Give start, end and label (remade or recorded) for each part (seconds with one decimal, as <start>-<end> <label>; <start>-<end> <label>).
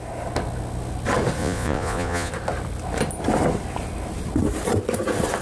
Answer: 0.0-1.4 recorded; 1.4-2.3 remade; 2.3-5.4 recorded